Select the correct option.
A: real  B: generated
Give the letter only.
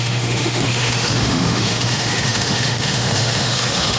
B